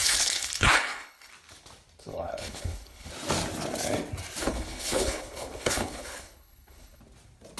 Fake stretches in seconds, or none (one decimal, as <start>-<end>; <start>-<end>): 0.0-1.3; 2.1-3.1; 4.4-7.0